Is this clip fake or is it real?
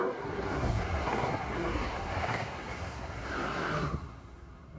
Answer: fake